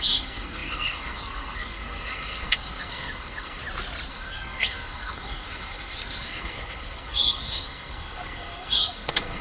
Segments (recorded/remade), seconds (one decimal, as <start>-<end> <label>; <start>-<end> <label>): 0.0-3.6 remade; 3.6-4.1 recorded; 4.1-9.4 remade